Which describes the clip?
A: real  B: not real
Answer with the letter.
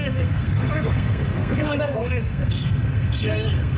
B